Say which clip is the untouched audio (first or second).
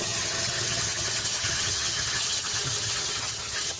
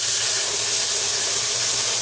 second